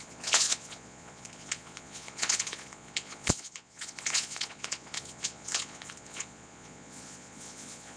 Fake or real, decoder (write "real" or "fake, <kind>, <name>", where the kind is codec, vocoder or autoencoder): fake, vocoder, Vocos